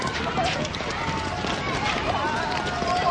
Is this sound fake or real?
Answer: real